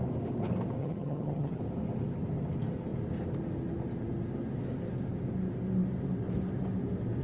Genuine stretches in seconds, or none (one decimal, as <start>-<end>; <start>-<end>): 0.0-0.8; 1.6-7.2